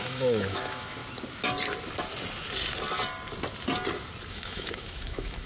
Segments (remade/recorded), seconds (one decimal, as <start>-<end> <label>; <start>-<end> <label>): 0.0-1.0 remade; 1.0-4.3 recorded; 4.3-5.5 remade